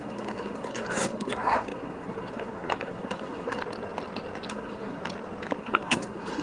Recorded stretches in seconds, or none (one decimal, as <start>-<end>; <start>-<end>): 3.6-4.5; 5.0-5.6